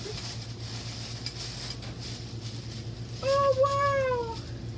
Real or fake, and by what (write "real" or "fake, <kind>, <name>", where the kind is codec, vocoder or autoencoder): real